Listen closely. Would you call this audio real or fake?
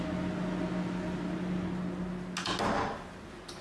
real